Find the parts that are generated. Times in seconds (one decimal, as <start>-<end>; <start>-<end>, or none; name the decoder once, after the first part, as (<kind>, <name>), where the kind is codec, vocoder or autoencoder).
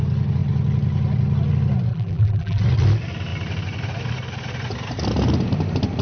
1.9-2.6 (vocoder, BigVGAN v2)